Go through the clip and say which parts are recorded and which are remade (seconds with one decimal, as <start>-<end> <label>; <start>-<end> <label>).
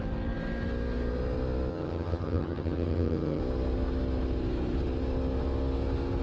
0.0-1.7 recorded; 1.7-3.4 remade; 3.4-6.2 recorded